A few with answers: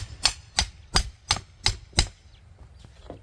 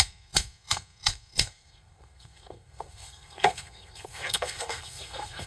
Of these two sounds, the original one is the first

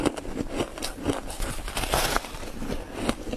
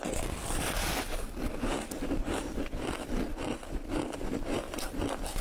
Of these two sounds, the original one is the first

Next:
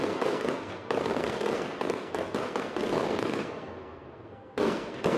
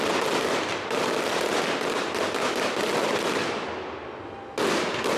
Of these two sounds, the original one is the second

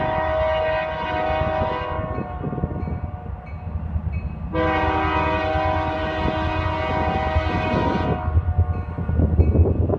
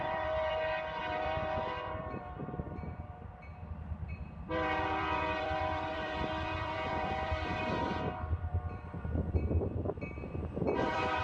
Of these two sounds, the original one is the first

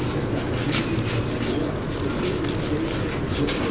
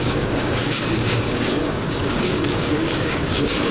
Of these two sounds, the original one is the first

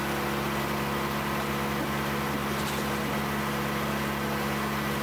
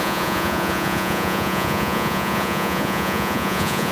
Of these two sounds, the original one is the first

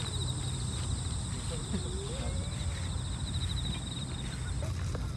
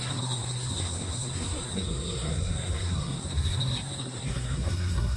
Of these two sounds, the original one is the first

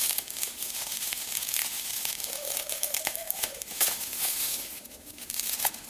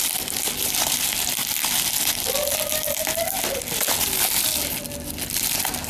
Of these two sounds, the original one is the second